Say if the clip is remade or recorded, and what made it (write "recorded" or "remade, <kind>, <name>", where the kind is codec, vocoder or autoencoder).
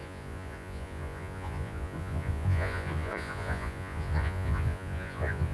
remade, vocoder, Vocos